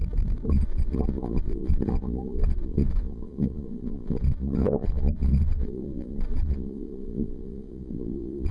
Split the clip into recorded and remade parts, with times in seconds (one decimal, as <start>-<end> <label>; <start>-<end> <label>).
0.0-0.5 recorded; 0.5-8.5 remade